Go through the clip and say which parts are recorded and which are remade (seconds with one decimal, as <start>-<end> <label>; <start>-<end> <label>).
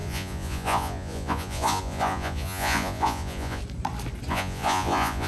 0.0-3.6 remade; 3.6-4.3 recorded; 4.3-5.3 remade